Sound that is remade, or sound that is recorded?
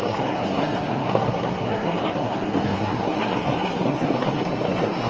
remade